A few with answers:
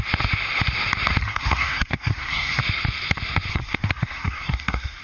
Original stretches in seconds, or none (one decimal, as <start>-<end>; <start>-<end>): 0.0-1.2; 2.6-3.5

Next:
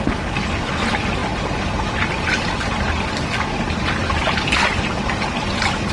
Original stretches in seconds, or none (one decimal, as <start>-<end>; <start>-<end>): 0.0-5.9

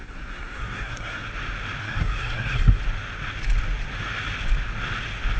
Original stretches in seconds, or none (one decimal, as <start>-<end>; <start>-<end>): 1.3-1.8; 2.8-5.4

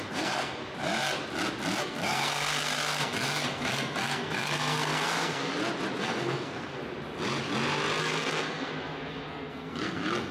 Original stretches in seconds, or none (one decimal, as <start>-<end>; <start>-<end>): 0.6-1.8; 5.5-6.0; 6.8-8.0

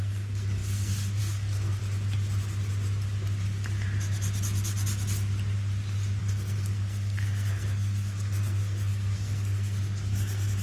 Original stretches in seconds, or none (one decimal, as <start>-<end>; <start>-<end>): 1.8-6.2

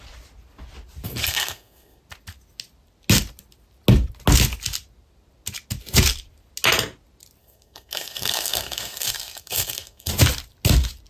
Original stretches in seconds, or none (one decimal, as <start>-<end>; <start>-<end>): 0.0-1.2; 2.0-7.4; 10.1-11.1

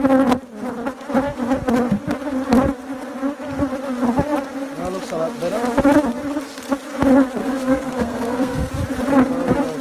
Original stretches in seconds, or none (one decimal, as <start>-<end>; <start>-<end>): 0.0-7.4; 8.7-9.8